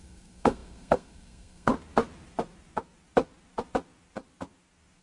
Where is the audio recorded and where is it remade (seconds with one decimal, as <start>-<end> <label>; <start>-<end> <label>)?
0.0-1.7 remade; 1.7-5.0 recorded